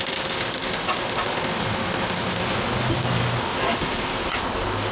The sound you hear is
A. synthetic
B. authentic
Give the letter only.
B